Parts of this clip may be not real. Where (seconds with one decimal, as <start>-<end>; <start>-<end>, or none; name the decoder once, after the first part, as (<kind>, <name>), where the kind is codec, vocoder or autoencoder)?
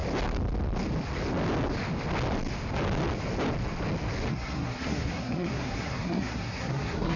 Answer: 4.3-7.2 (codec, SNAC)